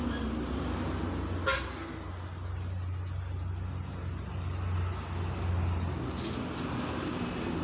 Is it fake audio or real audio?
real